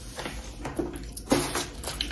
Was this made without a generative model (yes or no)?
yes